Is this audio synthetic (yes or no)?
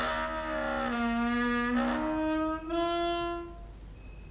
no